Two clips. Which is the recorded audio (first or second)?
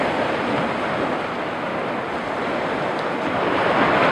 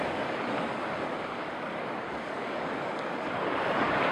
first